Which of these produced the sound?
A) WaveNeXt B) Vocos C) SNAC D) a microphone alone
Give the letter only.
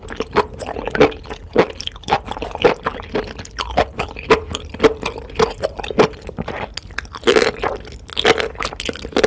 D